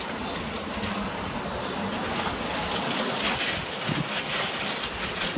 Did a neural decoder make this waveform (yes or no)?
no